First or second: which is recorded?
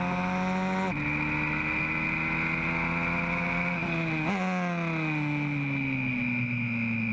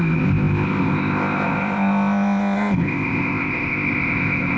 first